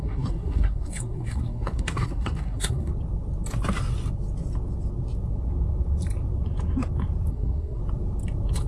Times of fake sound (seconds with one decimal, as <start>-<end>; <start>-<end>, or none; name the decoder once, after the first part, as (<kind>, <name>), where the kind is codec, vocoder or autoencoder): 0.0-2.9 (codec, SNAC); 7.3-7.8